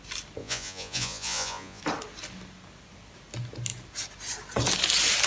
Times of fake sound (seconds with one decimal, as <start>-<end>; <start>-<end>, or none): 0.4-1.8